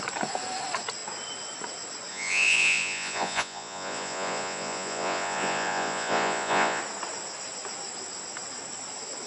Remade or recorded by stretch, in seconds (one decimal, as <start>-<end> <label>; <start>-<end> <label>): 0.0-2.1 recorded; 2.1-6.8 remade; 6.8-9.3 recorded